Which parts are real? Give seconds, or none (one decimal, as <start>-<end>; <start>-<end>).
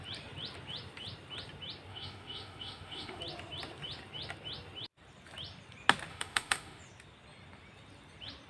0.0-1.9; 3.2-6.1; 6.8-8.5